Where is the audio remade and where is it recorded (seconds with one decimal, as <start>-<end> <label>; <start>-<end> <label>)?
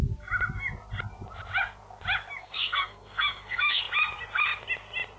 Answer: 0.0-2.4 recorded; 2.4-3.8 remade; 3.8-5.2 recorded